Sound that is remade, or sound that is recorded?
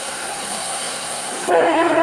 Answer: remade